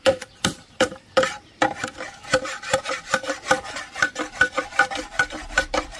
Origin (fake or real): fake